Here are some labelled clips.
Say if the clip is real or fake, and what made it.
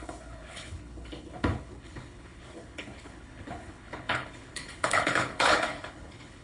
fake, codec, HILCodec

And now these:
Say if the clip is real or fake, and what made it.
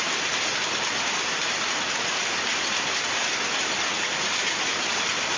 real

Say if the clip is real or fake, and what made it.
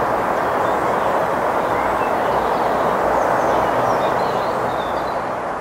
real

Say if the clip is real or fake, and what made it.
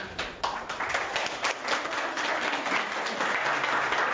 real